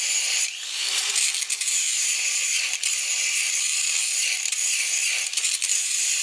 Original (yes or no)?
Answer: no